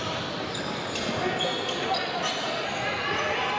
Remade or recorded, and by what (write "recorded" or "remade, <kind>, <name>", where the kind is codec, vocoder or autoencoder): recorded